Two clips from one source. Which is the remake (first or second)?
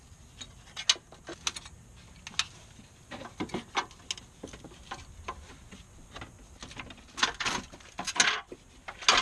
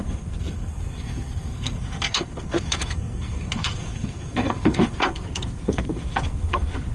second